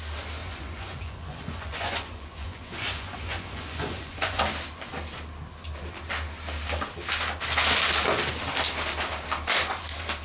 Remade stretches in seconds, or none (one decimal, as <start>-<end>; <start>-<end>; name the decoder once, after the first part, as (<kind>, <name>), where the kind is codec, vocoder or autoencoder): 0.4-4.4 (vocoder, Vocos)